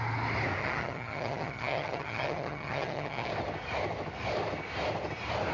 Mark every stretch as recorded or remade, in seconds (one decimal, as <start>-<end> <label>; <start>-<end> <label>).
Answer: 0.0-0.6 recorded; 0.6-3.3 remade; 3.3-5.5 recorded